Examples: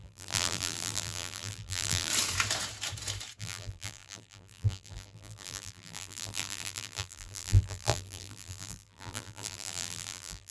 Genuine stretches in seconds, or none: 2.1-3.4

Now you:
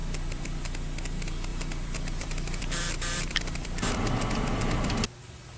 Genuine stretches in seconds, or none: 0.6-1.5; 4.9-5.6

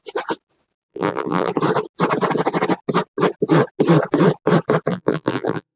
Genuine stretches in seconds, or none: 0.0-0.9; 1.5-4.9

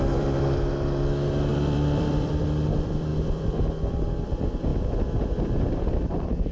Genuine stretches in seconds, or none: 4.7-5.9

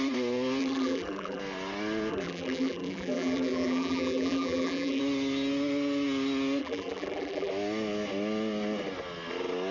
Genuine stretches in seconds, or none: 0.0-0.6; 1.4-2.1; 5.0-6.6; 7.5-9.7